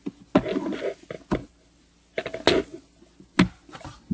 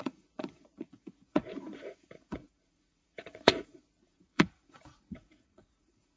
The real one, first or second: first